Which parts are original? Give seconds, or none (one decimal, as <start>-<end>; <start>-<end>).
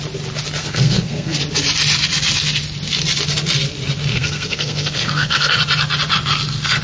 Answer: 0.0-0.6; 1.4-4.1; 5.5-6.8